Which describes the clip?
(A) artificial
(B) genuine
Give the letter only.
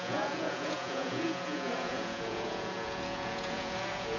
A